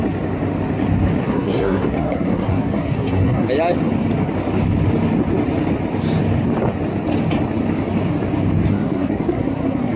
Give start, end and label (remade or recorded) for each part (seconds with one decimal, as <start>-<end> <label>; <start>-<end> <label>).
0.0-1.2 recorded; 1.2-3.5 remade; 3.5-8.7 recorded; 8.7-10.0 remade